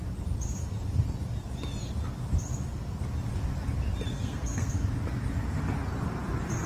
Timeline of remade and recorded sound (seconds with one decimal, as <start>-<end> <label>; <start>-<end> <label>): 0.0-4.1 recorded; 4.1-4.7 remade; 4.7-6.7 recorded